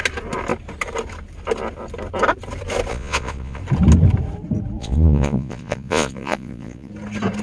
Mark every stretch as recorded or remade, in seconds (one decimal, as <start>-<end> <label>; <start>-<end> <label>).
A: 0.0-2.9 recorded; 2.9-3.6 remade; 3.6-4.8 recorded; 4.8-6.9 remade; 6.9-7.4 recorded